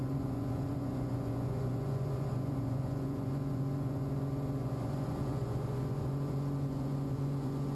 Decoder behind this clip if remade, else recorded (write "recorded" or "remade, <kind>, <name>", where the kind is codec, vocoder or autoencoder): remade, vocoder, Vocos